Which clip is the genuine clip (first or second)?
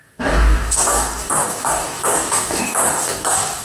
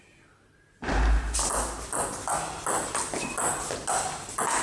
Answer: second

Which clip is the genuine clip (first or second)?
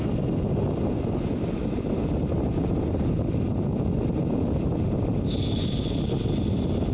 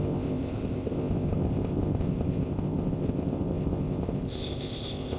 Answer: first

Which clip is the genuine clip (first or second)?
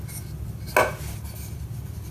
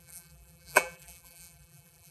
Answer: first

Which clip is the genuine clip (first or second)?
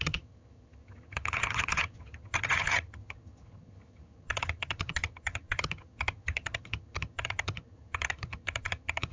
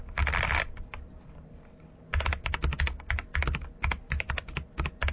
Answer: second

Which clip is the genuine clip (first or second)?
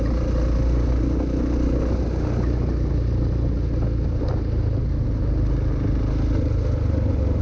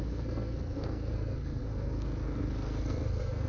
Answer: first